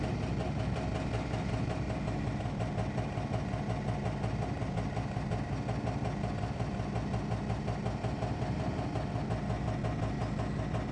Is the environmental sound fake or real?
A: real